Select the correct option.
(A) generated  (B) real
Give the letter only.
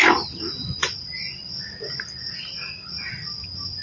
B